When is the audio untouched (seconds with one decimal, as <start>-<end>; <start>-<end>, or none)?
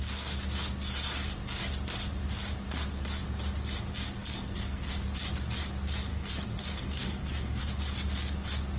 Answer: 0.0-4.2; 4.9-6.1; 7.6-8.8